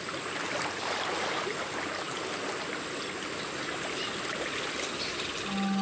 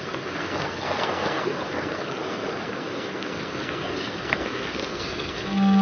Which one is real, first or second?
first